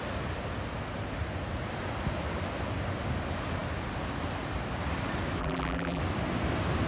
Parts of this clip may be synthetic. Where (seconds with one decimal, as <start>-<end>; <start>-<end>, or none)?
5.4-6.0